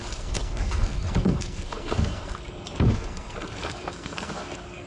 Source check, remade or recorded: remade